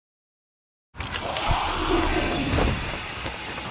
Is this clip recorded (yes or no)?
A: yes